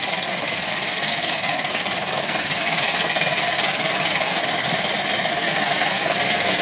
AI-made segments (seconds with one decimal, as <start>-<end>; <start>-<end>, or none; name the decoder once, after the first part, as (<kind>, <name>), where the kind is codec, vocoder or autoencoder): 0.0-4.4 (codec, SNAC); 5.3-6.6